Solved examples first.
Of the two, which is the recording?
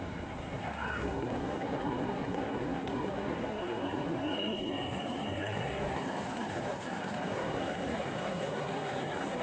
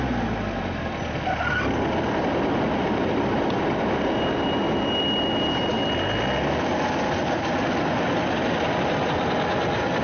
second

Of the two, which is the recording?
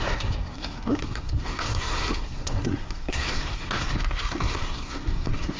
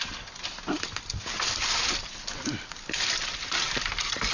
second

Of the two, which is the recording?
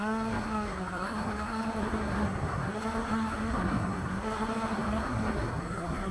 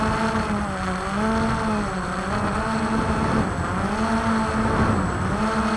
second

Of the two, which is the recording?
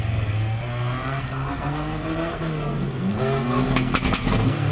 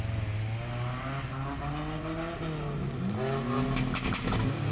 second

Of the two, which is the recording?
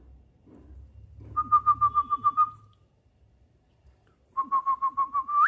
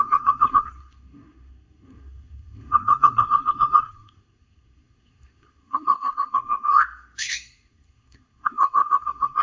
first